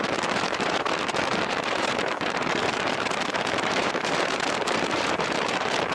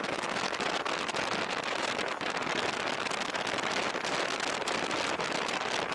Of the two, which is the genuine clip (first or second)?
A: second